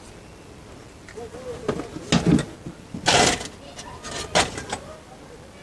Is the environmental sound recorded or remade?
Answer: recorded